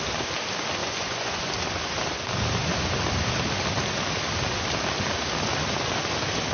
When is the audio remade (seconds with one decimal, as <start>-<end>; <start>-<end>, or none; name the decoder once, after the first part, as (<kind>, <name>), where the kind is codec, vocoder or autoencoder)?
0.8-1.5 (vocoder, Vocos)